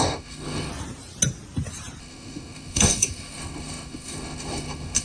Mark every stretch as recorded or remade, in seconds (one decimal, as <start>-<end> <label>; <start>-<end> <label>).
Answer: 0.0-0.7 remade; 0.7-2.0 recorded; 2.0-5.0 remade